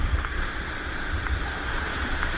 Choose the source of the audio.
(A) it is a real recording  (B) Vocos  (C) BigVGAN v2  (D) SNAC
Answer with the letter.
C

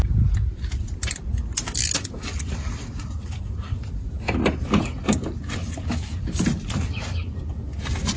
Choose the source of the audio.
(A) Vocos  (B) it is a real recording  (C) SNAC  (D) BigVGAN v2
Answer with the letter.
B